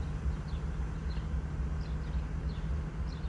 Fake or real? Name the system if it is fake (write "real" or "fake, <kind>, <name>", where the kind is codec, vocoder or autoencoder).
real